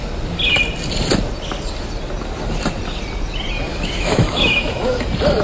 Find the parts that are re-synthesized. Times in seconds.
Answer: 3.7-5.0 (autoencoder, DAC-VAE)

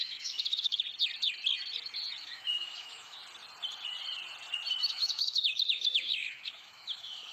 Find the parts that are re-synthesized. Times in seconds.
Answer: 0.0-0.7 (autoencoder, DAC-VAE); 2.2-3.2; 4.8-7.3

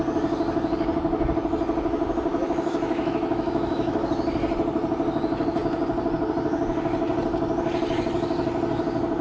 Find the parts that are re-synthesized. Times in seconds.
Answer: 2.3-4.1 (autoencoder, DAC-VAE)

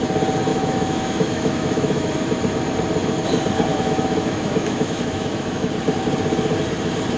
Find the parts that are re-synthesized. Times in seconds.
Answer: 0.5-2.1 (autoencoder, DAC-VAE); 3.7-5.7

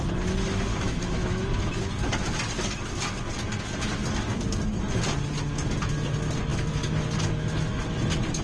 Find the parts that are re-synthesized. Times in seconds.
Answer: 0.7-1.5 (autoencoder, DAC-VAE)

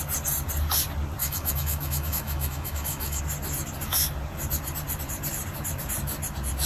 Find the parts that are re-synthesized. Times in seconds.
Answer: 1.2-3.2 (autoencoder, DAC-VAE)